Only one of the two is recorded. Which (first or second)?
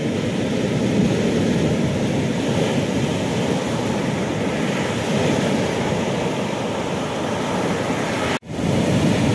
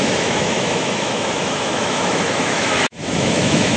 first